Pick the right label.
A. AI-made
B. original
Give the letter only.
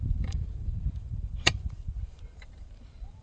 A